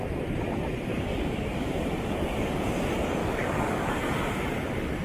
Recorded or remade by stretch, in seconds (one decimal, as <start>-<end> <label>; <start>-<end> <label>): 0.0-0.9 recorded; 0.9-2.6 remade; 2.6-3.2 recorded; 3.2-3.9 remade; 3.9-5.0 recorded

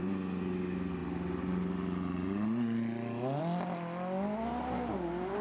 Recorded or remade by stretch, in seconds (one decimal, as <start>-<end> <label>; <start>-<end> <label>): 0.0-5.4 recorded

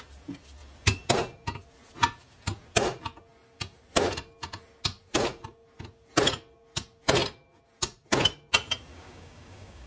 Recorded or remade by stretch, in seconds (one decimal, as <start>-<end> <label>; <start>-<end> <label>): 0.0-8.9 recorded; 8.9-9.9 remade

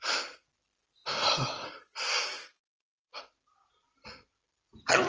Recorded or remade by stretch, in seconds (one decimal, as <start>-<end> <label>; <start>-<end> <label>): 0.0-2.1 recorded; 2.1-3.2 remade; 3.2-5.1 recorded

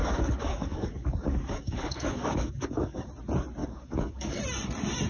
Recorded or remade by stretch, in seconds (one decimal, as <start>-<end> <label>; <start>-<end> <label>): 0.0-3.1 remade; 3.1-3.6 recorded; 3.6-4.4 remade; 4.4-5.1 recorded

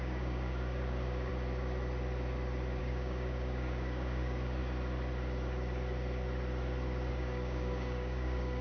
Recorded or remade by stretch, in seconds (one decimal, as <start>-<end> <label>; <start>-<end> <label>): 0.0-1.3 remade; 1.3-2.8 recorded; 2.8-4.6 remade; 4.6-7.1 recorded; 7.1-8.6 remade

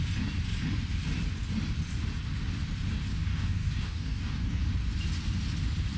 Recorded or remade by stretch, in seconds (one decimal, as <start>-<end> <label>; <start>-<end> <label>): 0.0-3.1 recorded; 3.1-4.6 remade; 4.6-6.0 recorded